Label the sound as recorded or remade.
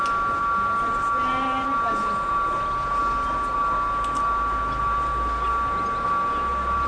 recorded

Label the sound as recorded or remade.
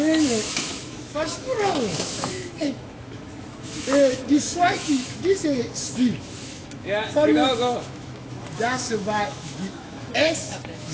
remade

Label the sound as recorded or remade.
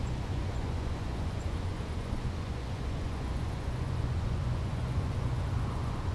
remade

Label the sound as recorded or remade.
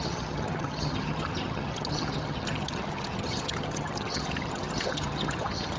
remade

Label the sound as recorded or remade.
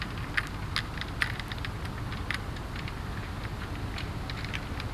recorded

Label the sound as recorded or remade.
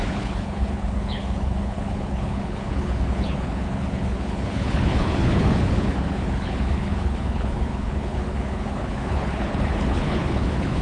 remade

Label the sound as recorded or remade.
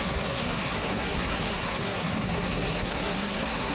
remade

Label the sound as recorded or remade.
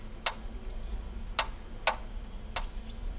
recorded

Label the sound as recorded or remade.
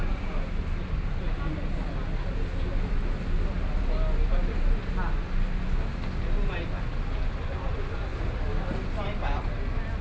recorded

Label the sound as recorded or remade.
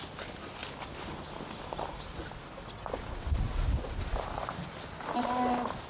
recorded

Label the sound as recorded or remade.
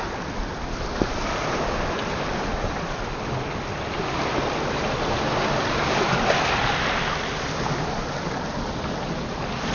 recorded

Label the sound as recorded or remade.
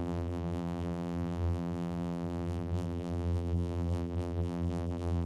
remade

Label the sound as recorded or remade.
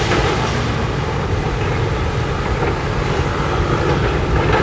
remade